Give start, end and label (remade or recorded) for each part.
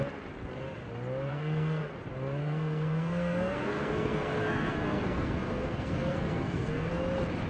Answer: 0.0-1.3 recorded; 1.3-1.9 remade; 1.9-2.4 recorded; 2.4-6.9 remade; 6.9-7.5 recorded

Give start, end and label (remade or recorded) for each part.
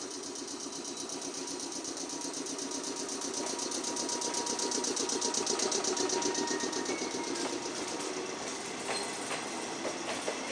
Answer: 0.0-1.4 recorded; 1.4-2.2 remade; 2.2-10.5 recorded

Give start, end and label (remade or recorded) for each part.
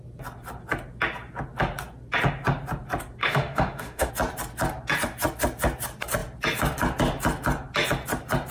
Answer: 0.0-3.2 recorded; 3.2-4.1 remade; 4.1-8.5 recorded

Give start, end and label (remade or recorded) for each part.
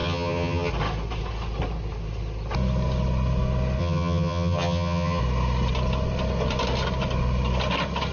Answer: 0.0-0.7 remade; 0.7-3.8 recorded; 3.8-5.2 remade; 5.2-8.1 recorded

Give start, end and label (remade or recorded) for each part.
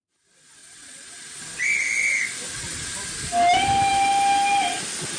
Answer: 0.0-0.6 recorded; 0.6-1.4 remade; 1.4-5.2 recorded